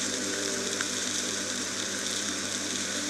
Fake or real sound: fake